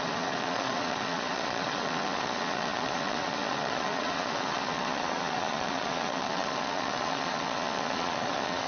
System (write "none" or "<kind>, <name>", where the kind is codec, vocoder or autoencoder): vocoder, Vocos